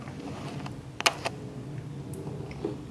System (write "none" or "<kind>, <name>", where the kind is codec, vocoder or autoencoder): none